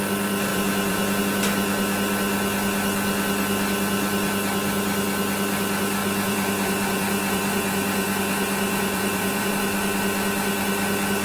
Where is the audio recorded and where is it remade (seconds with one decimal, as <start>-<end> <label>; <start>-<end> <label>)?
0.0-0.5 recorded; 0.5-1.2 remade; 1.2-6.0 recorded; 6.0-9.5 remade; 9.5-11.2 recorded